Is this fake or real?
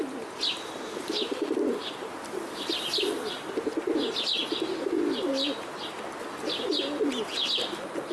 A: real